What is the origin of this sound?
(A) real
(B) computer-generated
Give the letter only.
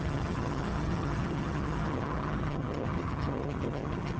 B